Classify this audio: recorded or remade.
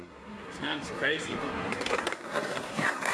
remade